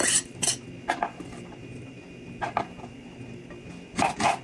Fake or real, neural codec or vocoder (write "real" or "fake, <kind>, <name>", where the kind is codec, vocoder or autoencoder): real